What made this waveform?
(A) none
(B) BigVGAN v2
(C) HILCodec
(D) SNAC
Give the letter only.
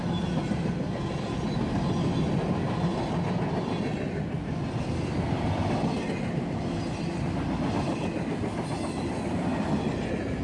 A